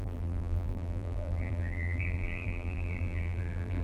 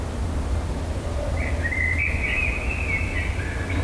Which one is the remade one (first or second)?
first